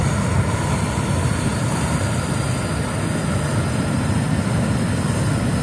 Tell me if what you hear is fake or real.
real